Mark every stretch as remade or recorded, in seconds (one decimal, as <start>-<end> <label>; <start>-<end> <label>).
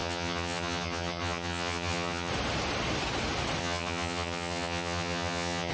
0.0-2.3 remade; 2.3-3.6 recorded; 3.6-5.7 remade